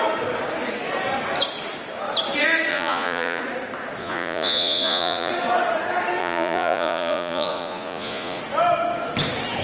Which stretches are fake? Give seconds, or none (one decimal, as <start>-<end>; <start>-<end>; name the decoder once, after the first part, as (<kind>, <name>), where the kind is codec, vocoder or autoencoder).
2.7-3.4 (vocoder, Vocos); 4.0-5.3; 6.2-8.4